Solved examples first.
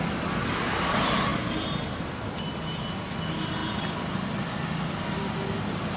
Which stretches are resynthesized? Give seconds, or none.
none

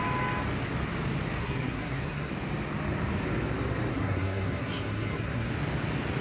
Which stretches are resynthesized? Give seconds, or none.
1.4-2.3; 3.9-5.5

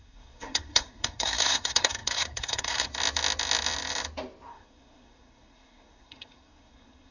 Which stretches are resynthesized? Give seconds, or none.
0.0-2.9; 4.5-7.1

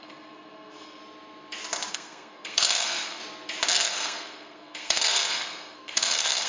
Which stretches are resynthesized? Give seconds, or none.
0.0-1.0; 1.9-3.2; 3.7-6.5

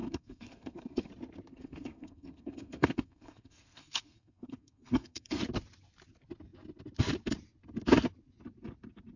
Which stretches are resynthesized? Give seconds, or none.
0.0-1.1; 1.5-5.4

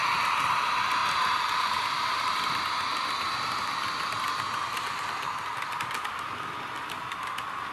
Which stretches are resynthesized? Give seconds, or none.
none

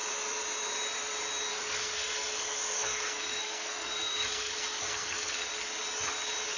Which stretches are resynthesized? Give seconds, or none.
1.5-5.5